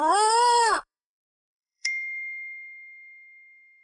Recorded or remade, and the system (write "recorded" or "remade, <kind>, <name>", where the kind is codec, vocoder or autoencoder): remade, codec, SNAC